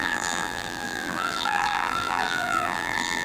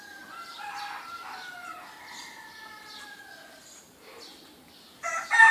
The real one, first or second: second